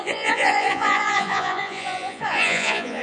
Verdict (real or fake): fake